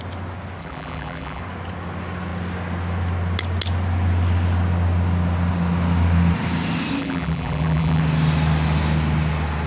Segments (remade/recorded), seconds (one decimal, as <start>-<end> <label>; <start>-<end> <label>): 0.0-0.6 recorded; 0.6-1.4 remade; 1.4-7.0 recorded; 7.0-8.0 remade; 8.0-9.7 recorded